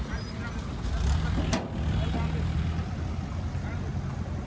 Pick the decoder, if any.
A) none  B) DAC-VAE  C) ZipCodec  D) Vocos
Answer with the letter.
A